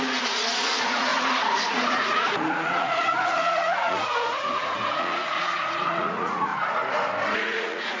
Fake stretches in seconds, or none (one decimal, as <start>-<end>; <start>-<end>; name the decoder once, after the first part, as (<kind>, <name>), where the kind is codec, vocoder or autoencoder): 0.0-6.5 (vocoder, Vocos); 7.3-8.0